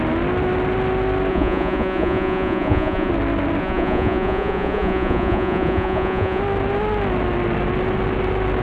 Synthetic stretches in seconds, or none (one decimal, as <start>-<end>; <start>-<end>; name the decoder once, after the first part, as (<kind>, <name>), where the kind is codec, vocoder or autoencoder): 1.3-3.1 (vocoder, Vocos); 3.6-6.4